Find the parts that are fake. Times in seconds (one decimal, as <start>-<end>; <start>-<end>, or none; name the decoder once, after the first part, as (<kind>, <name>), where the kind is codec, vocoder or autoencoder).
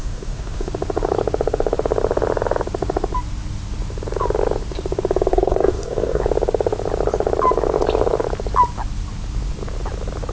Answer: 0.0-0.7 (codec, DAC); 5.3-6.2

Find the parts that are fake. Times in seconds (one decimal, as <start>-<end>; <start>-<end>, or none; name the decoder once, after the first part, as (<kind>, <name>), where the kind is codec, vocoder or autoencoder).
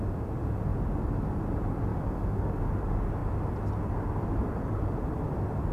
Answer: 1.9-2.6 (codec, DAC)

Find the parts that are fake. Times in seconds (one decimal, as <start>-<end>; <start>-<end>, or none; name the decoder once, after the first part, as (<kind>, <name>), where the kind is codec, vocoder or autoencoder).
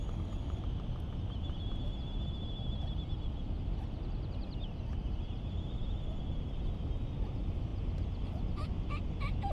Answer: 0.0-0.6 (codec, DAC)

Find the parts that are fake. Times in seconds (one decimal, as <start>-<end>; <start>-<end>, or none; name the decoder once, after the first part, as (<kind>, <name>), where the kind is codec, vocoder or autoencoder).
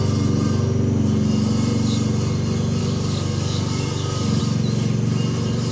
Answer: 2.8-4.4 (codec, DAC)